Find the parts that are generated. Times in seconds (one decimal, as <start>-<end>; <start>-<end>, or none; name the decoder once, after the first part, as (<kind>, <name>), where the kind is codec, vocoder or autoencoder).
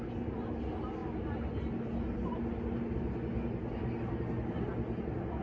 none